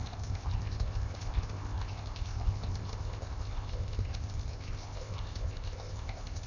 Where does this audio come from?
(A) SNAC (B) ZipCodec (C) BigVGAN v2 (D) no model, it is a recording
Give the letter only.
B